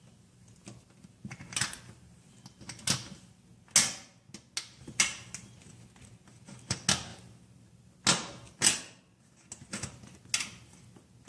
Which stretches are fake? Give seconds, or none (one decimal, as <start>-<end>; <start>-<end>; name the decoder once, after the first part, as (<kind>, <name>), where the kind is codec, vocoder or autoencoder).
none